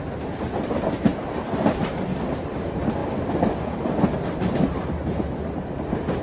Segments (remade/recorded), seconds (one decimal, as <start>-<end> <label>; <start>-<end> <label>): 0.0-1.1 recorded; 1.1-1.9 remade; 1.9-3.0 recorded; 3.0-5.2 remade; 5.2-6.2 recorded